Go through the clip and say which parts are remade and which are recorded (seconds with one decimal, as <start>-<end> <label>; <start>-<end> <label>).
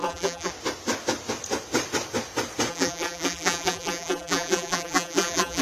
0.0-0.5 remade; 0.5-2.7 recorded; 2.7-5.6 remade